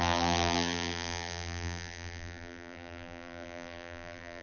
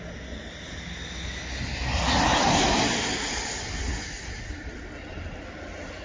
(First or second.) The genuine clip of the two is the second